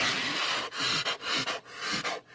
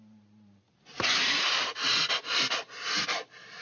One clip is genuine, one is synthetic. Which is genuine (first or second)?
first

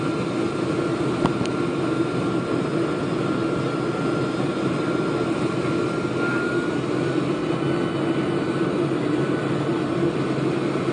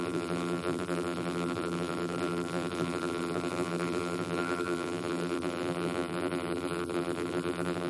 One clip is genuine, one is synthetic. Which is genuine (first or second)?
first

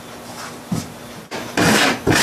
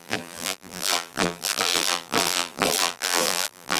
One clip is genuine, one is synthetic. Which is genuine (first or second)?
first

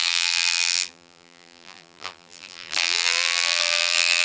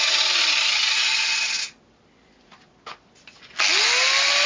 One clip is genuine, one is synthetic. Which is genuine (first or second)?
second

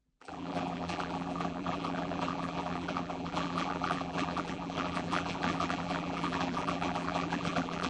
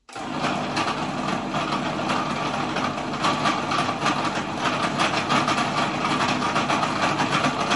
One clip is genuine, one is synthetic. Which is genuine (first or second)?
second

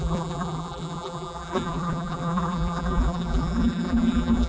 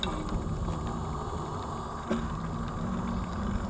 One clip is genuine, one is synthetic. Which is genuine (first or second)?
second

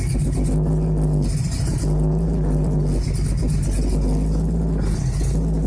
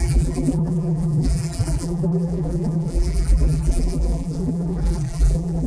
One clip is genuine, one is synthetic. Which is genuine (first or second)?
first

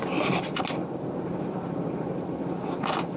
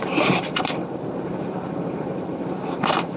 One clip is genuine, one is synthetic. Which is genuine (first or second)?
first